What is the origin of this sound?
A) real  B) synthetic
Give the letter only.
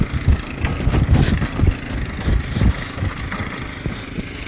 A